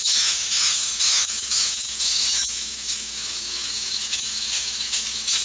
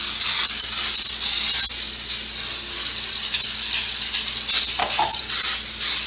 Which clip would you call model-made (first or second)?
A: first